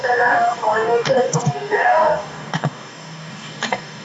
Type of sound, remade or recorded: remade